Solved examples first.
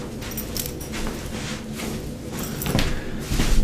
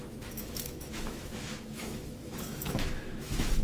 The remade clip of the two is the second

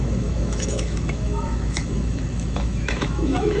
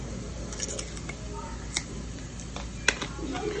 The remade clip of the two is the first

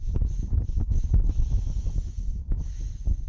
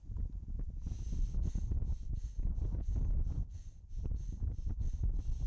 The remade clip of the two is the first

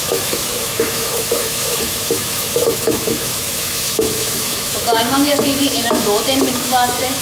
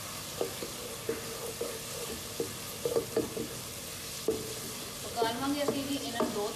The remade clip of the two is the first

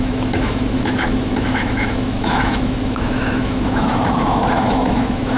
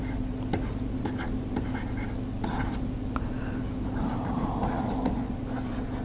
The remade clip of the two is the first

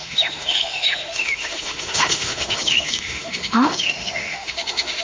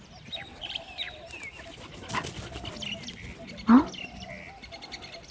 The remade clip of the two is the first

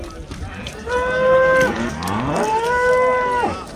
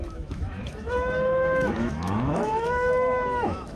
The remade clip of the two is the second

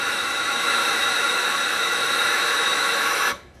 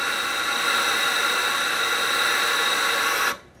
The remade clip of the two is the first